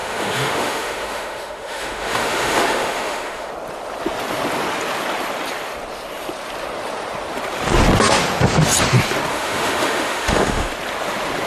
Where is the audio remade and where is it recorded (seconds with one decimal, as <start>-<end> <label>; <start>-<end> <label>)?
0.0-3.5 remade; 3.5-9.3 recorded; 9.3-10.7 remade; 10.7-11.5 recorded